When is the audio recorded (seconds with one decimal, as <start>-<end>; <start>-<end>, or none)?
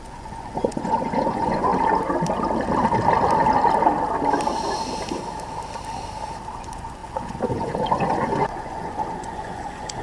1.7-6.5